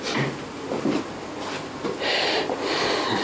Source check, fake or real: real